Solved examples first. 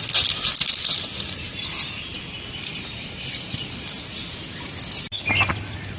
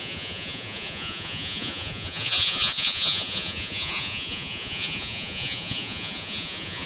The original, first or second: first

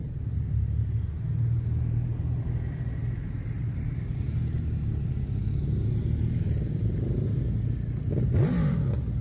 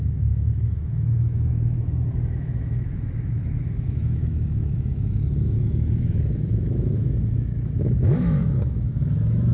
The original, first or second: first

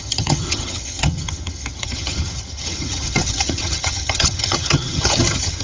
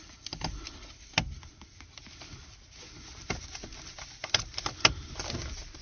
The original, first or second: second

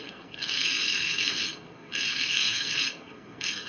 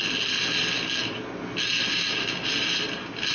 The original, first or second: second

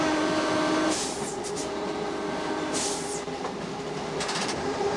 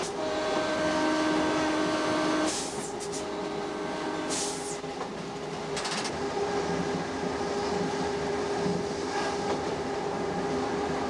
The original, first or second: second